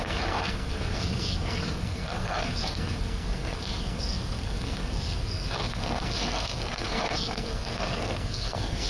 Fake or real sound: fake